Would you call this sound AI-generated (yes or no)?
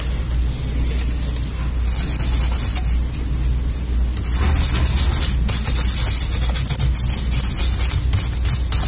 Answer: no